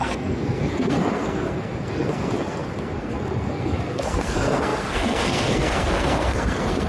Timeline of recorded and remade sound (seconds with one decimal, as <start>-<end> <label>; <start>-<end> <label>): 0.0-6.9 remade